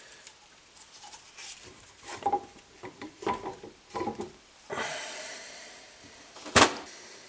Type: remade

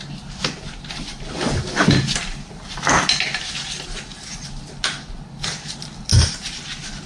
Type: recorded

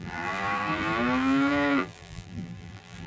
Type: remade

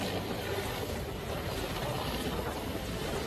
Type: recorded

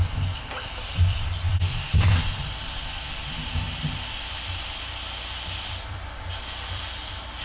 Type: remade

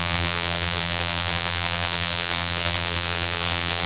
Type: remade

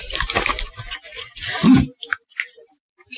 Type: remade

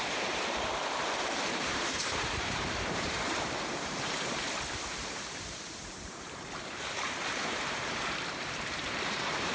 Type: remade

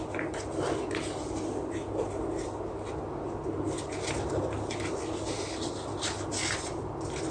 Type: recorded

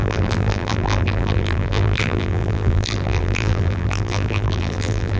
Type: remade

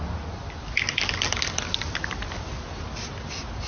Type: recorded